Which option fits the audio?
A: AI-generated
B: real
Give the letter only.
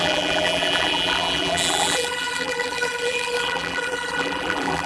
A